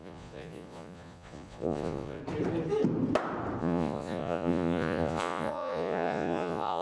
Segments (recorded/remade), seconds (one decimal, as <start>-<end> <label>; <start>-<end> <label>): 0.0-2.2 remade; 2.2-3.6 recorded; 3.6-6.8 remade